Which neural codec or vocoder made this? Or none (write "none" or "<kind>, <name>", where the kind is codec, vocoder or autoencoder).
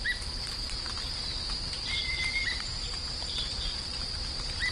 vocoder, BigVGAN v2